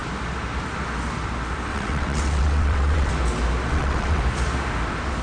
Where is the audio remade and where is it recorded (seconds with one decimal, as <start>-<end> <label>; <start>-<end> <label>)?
0.0-1.7 recorded; 1.7-3.1 remade; 3.1-3.7 recorded; 3.7-4.2 remade; 4.2-5.2 recorded